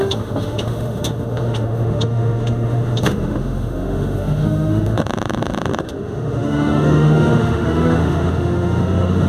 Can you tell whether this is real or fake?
fake